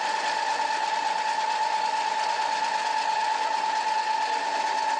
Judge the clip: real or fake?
real